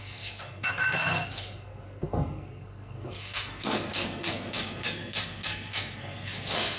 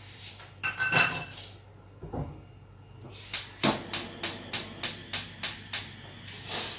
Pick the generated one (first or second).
first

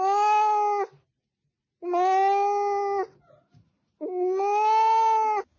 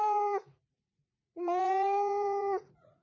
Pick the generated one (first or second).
second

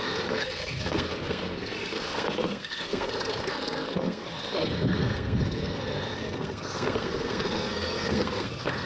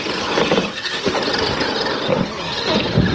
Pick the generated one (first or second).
first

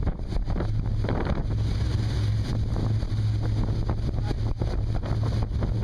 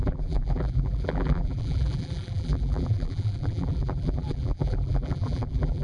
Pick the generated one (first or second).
second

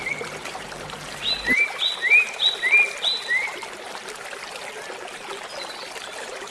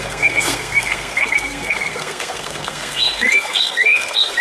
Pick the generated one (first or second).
second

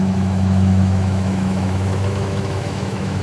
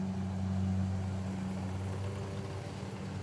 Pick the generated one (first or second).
first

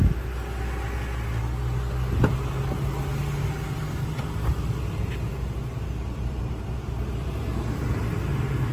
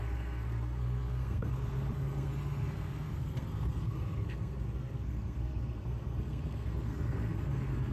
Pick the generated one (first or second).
second